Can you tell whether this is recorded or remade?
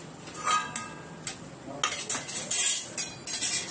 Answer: recorded